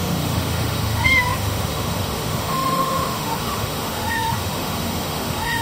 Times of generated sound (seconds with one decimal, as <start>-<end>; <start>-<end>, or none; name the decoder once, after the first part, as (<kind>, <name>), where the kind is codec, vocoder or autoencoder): 0.0-5.6 (autoencoder, DAC-VAE)

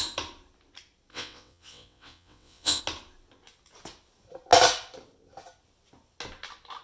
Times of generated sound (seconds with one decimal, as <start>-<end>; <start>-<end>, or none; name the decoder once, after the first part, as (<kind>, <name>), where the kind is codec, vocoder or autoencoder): 1.1-2.8 (vocoder, WaveNeXt)

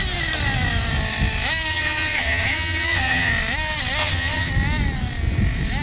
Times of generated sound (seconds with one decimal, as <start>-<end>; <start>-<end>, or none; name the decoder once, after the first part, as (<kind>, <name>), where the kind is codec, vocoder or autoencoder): 1.7-3.3 (vocoder, HiFi-GAN); 4.0-4.5